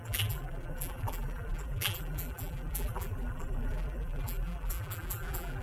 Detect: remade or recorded remade